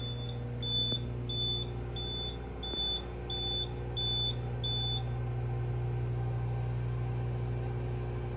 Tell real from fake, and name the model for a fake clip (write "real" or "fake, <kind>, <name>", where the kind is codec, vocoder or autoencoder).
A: real